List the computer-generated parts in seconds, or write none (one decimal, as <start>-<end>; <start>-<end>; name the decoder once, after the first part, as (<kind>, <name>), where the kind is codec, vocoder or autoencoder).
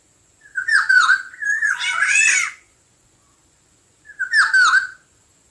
0.0-4.1 (vocoder, Vocos); 5.1-5.5